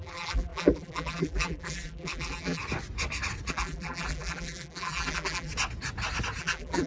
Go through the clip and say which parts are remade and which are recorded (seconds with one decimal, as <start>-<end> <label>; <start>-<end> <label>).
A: 0.0-2.6 remade; 2.6-3.5 recorded; 3.5-5.5 remade; 5.5-6.4 recorded; 6.4-6.9 remade